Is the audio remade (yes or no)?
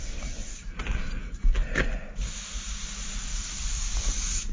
no